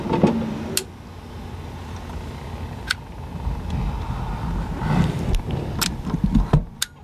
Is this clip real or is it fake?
real